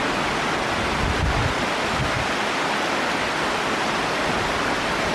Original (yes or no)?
yes